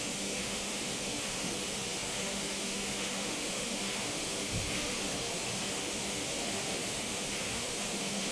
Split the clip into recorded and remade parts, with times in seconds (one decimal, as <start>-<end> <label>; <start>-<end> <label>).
0.0-8.3 remade